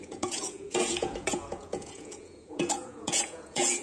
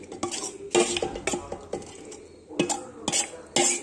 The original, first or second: second